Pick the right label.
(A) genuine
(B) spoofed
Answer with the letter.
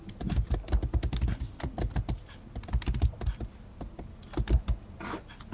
A